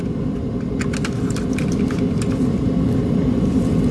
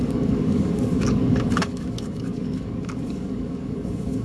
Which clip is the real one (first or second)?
first